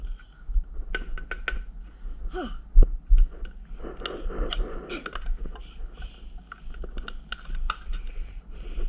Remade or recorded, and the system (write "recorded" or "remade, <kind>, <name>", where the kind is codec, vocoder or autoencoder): recorded